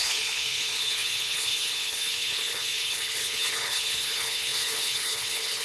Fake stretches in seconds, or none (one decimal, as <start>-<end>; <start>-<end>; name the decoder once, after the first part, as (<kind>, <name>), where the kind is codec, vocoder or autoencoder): 0.0-5.6 (codec, HILCodec)